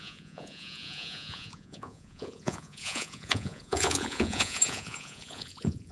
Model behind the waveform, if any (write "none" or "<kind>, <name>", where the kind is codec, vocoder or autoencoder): vocoder, Vocos